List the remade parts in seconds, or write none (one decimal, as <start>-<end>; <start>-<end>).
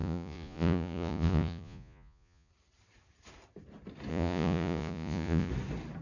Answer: 0.0-2.5; 4.1-5.5